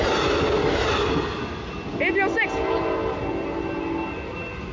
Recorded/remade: recorded